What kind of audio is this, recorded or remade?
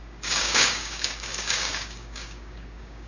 remade